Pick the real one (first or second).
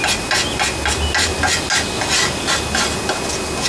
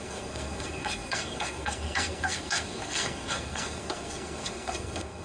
first